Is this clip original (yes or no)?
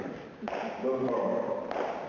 yes